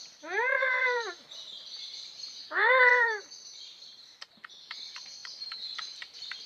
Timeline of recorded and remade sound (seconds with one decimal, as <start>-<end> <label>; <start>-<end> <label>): 0.0-6.5 remade